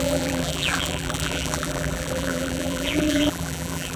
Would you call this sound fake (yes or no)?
yes